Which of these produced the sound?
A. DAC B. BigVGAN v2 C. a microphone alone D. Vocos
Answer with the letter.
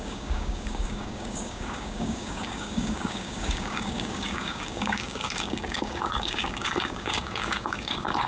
A